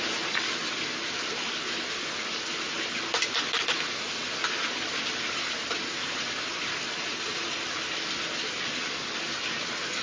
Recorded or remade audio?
recorded